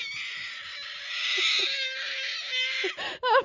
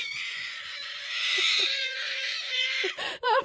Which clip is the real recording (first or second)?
first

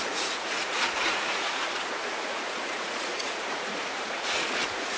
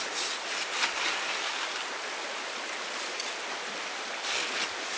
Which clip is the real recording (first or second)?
second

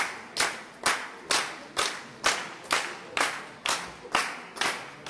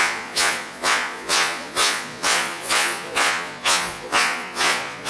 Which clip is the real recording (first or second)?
first